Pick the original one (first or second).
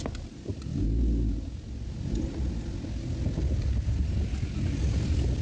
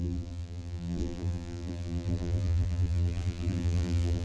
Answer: first